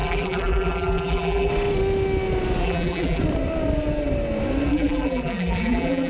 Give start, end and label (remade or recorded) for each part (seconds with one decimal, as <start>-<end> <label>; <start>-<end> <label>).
0.0-1.5 remade; 1.5-2.6 recorded; 2.6-3.2 remade; 3.2-4.7 recorded; 4.7-6.1 remade